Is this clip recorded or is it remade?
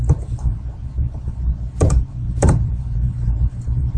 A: remade